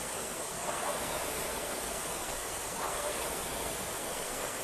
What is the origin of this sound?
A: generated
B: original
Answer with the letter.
A